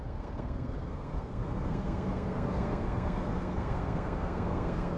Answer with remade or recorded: remade